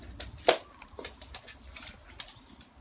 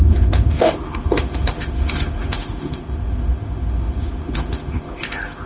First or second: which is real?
first